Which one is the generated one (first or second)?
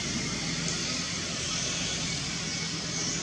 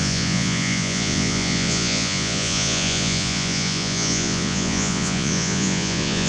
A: second